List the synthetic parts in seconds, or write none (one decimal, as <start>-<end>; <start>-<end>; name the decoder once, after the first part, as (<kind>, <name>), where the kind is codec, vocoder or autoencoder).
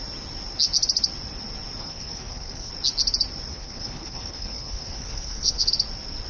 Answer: 1.8-2.7 (codec, HILCodec); 3.5-5.7